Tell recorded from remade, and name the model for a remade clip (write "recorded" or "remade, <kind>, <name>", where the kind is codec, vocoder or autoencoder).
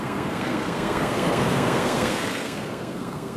remade, codec, SNAC